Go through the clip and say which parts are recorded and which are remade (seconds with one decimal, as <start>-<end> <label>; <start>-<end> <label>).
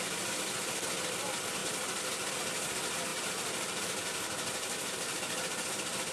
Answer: 0.0-6.1 recorded